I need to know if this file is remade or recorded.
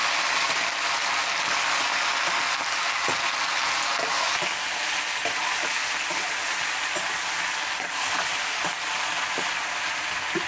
recorded